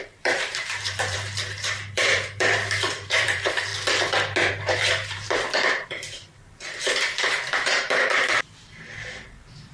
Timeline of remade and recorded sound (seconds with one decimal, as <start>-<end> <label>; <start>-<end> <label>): 0.0-3.7 remade; 3.7-4.5 recorded; 4.5-9.7 remade